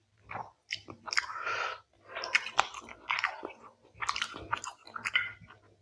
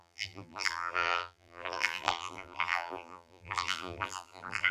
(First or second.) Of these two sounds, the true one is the first